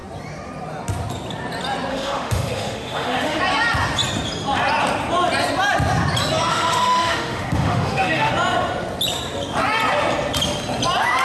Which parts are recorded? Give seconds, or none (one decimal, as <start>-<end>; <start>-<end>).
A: 0.0-1.9; 3.4-6.5; 8.3-11.2